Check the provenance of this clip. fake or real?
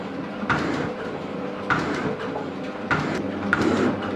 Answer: fake